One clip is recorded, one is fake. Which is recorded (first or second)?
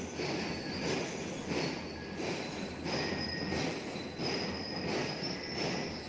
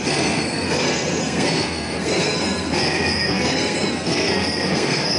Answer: first